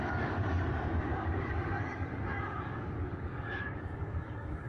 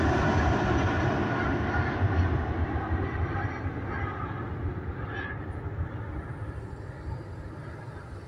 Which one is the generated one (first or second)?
first